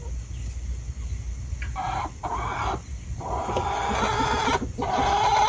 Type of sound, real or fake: real